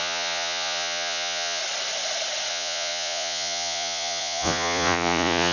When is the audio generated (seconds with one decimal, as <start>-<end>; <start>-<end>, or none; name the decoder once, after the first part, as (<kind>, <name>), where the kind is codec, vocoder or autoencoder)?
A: 0.0-1.6 (vocoder, Vocos); 2.5-5.5

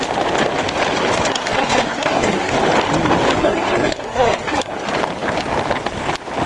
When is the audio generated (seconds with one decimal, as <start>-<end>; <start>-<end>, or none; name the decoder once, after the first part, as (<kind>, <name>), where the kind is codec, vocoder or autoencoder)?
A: 1.3-2.5 (codec, SNAC); 3.4-4.7